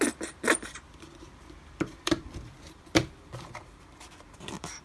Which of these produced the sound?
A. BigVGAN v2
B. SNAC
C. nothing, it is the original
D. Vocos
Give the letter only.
A